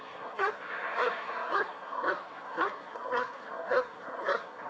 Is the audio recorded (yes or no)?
no